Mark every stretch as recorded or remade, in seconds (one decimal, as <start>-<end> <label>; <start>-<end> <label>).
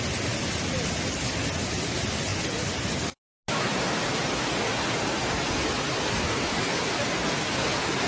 0.0-8.1 recorded